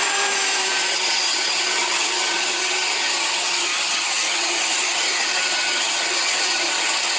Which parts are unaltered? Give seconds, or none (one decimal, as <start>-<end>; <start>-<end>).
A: 0.0-0.9